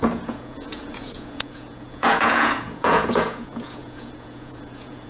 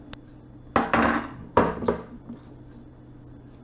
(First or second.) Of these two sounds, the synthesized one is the first